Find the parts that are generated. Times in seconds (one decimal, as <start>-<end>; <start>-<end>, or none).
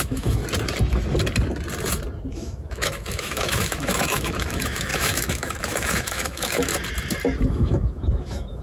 0.0-0.4; 2.3-6.7; 7.5-8.6